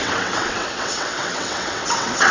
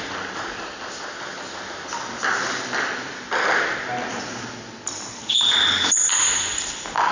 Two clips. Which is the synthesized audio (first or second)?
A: first